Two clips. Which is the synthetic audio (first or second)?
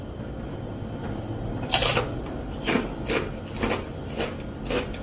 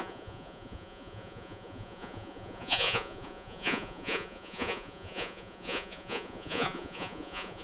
second